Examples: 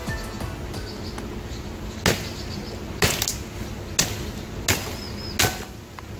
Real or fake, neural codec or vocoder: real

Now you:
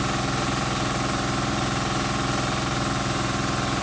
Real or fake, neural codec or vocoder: real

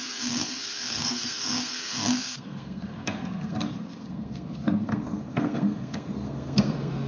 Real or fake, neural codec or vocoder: fake, codec, SNAC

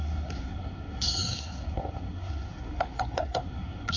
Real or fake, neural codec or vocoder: fake, codec, SNAC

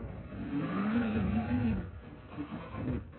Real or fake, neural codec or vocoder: fake, codec, SNAC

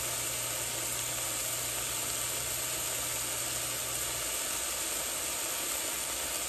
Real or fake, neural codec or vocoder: real